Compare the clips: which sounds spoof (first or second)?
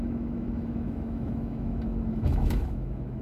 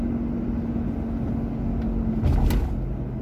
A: first